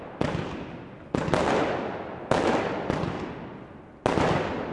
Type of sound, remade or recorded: recorded